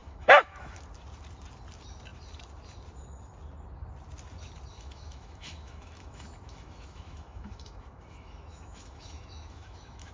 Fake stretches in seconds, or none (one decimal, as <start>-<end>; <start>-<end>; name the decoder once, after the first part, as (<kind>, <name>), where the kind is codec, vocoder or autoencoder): 0.0-0.8 (autoencoder, DAC-VAE); 4.7-10.1